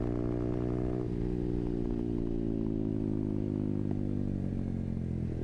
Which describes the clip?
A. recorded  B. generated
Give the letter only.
A